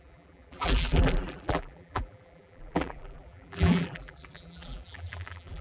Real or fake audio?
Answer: fake